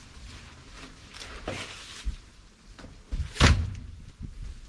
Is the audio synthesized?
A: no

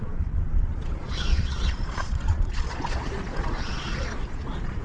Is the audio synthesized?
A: yes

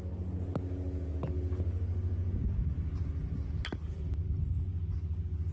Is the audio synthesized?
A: no